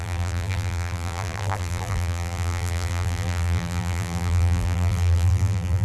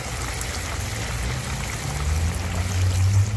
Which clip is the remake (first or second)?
first